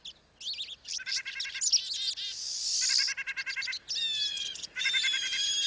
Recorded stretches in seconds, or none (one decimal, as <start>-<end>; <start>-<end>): 0.0-4.3; 4.9-5.7